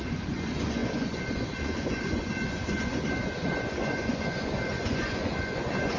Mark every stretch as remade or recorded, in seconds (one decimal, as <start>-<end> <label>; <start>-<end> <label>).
0.0-6.0 remade